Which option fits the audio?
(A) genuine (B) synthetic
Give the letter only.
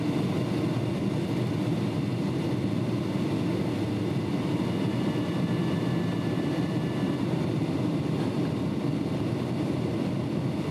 A